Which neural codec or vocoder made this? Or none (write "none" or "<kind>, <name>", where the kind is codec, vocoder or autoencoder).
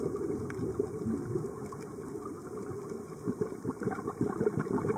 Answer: none